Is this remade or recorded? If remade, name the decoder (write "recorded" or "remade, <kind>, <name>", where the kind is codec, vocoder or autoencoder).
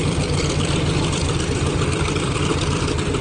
remade, vocoder, BigVGAN v2